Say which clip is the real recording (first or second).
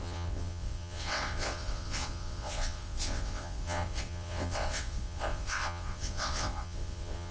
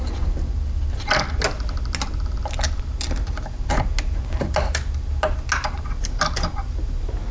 second